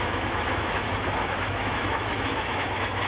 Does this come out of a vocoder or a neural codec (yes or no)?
yes